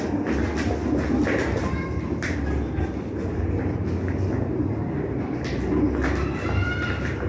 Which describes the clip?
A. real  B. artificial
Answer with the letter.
A